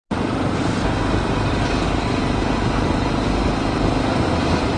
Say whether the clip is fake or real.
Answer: real